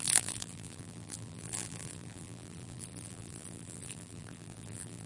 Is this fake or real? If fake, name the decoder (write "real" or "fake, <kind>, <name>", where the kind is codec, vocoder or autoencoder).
fake, vocoder, BigVGAN v2